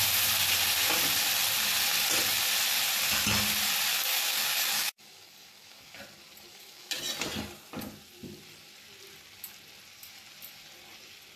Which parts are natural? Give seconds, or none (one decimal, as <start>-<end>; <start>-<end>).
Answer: 0.0-3.9; 6.0-6.5; 7.0-11.4